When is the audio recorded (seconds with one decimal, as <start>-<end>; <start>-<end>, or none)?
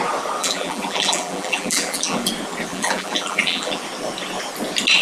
0.0-0.4; 2.3-2.7; 3.8-5.0